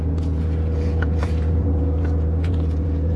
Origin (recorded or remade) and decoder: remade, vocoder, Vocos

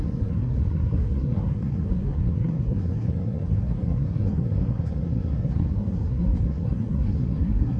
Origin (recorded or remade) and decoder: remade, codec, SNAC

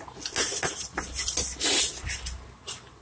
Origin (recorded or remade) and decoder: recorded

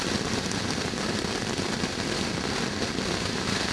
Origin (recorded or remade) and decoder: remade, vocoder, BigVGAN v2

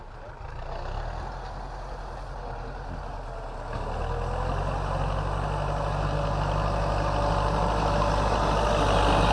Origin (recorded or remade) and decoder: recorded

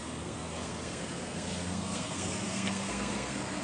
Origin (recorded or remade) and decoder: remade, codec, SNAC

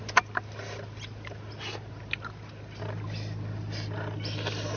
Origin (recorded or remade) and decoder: recorded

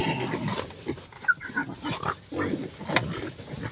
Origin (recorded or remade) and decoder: recorded